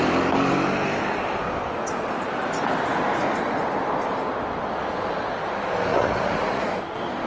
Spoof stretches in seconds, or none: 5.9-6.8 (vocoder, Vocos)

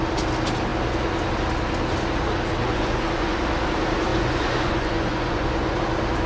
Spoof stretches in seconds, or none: 2.7-3.4 (vocoder, Vocos); 4.1-5.8

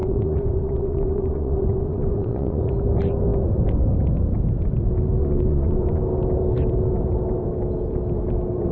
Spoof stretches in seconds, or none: 0.0-2.7 (vocoder, Vocos); 5.2-6.0

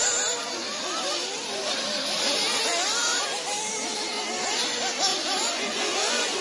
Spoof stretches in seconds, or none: 5.1-6.4 (vocoder, Vocos)

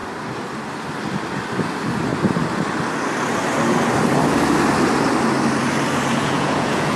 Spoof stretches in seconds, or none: 6.2-7.0 (vocoder, Vocos)

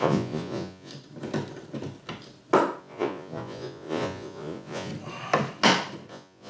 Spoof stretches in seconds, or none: 0.0-0.9 (vocoder, Vocos); 2.8-4.9; 6.1-6.5